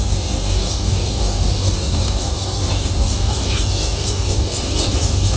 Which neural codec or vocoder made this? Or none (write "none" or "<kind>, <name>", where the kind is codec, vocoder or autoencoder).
codec, DAC